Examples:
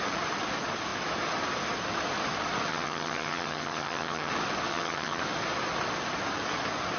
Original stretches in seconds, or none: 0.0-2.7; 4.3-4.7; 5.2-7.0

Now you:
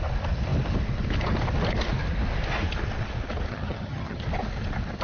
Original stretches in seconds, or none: 0.0-3.5; 4.2-5.0

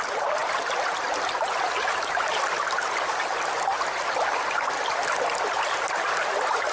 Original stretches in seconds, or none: 0.0-6.7

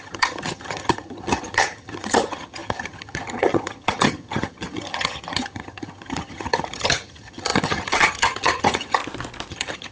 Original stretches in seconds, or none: 9.0-9.5

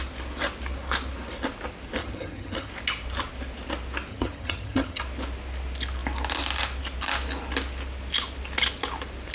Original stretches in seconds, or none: 0.0-2.0; 2.7-4.1; 5.0-9.3

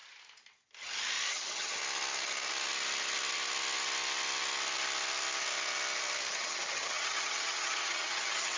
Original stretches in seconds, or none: 0.0-1.3; 1.8-6.3